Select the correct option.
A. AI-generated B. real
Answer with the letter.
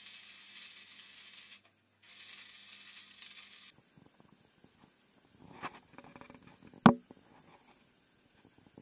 B